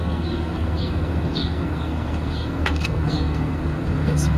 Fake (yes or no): yes